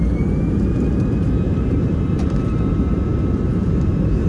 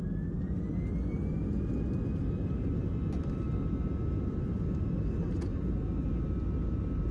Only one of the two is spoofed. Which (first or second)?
first